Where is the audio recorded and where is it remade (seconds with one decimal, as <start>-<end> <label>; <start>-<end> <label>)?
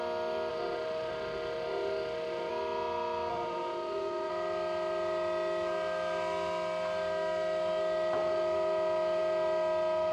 0.0-0.5 recorded; 0.5-2.5 remade; 2.5-3.3 recorded; 3.3-4.3 remade; 4.3-10.1 recorded